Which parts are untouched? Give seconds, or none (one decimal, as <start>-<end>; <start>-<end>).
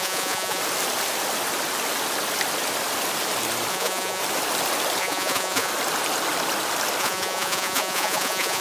0.6-3.7; 4.2-5.0; 5.7-7.0